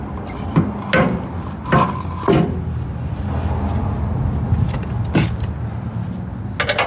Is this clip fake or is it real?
real